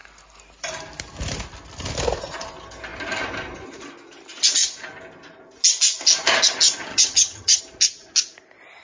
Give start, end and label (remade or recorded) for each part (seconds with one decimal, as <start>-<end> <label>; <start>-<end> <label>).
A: 0.0-6.9 recorded; 6.9-7.6 remade; 7.6-8.8 recorded